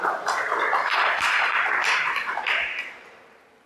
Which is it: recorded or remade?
remade